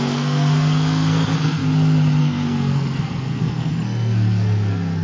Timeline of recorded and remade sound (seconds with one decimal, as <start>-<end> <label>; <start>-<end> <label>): 0.0-1.6 remade; 1.6-2.2 recorded; 2.2-5.0 remade